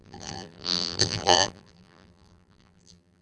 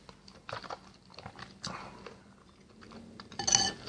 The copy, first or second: first